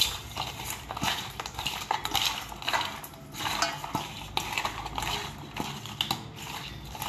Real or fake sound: real